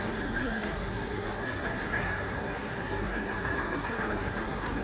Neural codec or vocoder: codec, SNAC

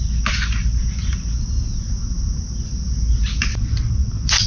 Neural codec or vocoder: none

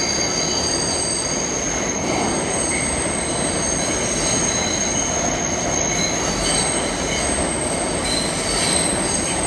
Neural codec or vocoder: none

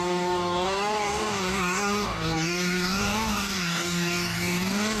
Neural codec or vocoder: codec, DAC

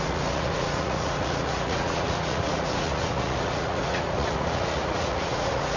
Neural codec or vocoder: vocoder, Vocos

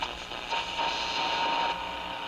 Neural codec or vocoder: none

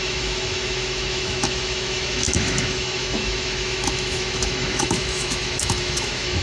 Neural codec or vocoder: autoencoder, DAC-VAE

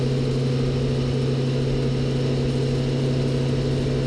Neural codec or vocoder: none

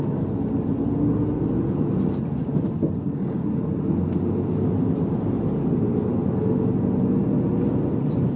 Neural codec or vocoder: none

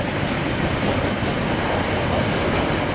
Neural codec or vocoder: none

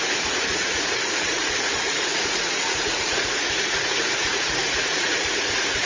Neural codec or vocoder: vocoder, Vocos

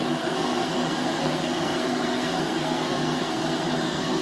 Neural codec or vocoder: codec, SNAC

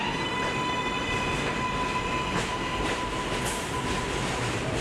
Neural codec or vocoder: none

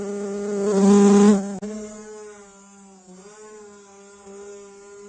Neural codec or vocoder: none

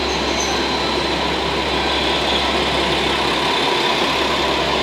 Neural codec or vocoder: none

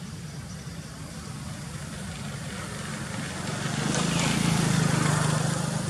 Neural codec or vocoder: vocoder, BigVGAN v2